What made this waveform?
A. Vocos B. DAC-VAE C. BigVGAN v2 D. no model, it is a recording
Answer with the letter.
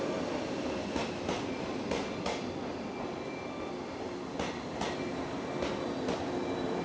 D